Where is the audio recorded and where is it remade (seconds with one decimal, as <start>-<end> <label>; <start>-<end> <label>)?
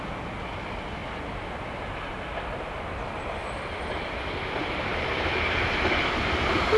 0.0-3.4 recorded; 3.4-4.6 remade; 4.6-6.8 recorded